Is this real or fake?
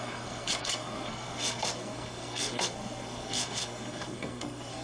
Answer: fake